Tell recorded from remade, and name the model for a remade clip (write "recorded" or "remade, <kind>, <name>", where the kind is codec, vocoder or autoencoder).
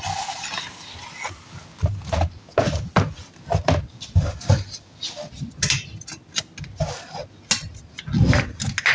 recorded